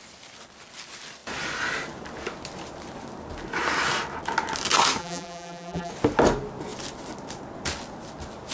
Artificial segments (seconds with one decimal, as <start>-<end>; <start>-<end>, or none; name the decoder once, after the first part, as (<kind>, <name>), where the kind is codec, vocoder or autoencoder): 5.0-5.9 (vocoder, BigVGAN v2)